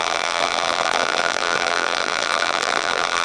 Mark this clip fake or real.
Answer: fake